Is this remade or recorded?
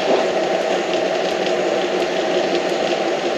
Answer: recorded